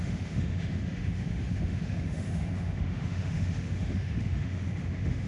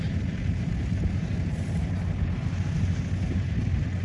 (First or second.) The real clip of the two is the second